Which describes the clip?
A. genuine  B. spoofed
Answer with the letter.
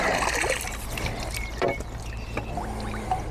A